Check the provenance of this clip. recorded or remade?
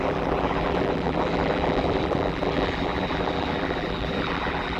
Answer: remade